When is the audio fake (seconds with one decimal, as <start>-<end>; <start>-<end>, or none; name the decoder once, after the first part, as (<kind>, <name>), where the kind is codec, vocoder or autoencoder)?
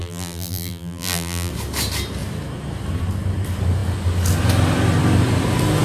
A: 0.0-1.5 (vocoder, BigVGAN v2)